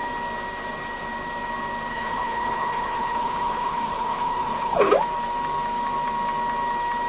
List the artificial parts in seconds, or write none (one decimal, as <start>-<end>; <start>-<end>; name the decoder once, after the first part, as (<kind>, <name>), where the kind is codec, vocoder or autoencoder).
1.9-4.9 (codec, HILCodec)

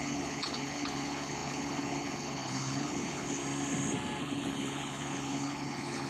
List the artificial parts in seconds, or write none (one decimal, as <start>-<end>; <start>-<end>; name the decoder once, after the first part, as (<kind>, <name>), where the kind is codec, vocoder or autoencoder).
0.0-3.4 (codec, HILCodec); 4.2-6.1

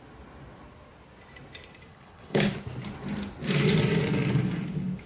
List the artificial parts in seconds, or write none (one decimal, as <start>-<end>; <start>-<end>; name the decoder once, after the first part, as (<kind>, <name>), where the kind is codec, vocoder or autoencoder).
1.9-2.5 (codec, HILCodec)

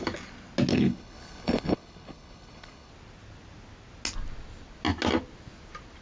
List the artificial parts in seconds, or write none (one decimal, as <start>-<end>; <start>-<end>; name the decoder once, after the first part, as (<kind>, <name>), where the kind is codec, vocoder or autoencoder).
0.7-2.9 (codec, HILCodec)